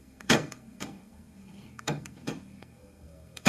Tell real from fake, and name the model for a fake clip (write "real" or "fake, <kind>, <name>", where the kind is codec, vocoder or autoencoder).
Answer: fake, codec, SNAC